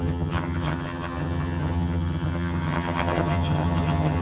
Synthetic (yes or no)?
yes